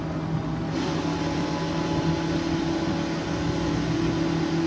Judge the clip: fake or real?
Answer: real